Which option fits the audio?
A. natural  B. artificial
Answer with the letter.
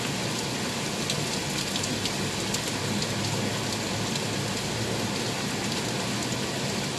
A